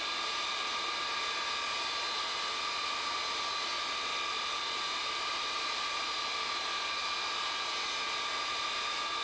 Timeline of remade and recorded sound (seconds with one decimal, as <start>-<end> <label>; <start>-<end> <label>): 0.0-9.2 recorded